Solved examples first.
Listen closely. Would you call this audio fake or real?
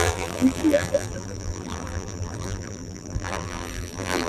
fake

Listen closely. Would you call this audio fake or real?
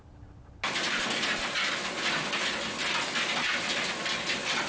real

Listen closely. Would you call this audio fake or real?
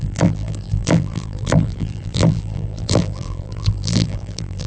fake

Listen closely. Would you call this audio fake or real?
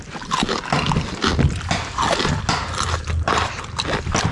real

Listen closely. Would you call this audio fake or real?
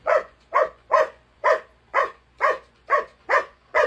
fake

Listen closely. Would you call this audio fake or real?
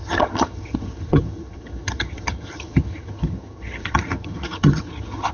fake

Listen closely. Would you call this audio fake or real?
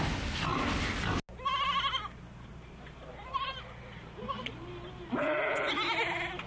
real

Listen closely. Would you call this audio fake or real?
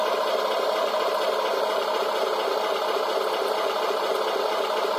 real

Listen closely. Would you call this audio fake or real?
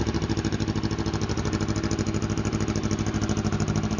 real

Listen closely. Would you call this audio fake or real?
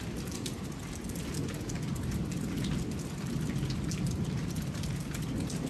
real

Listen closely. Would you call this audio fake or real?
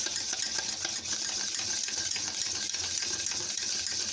real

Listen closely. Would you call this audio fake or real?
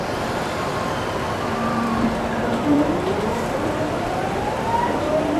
fake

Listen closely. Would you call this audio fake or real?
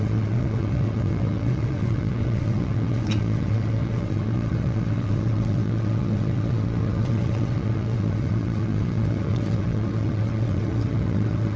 fake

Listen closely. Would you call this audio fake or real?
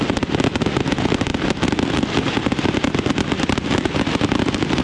real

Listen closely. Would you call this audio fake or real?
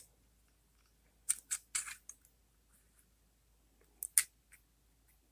real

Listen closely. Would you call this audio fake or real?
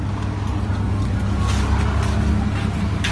real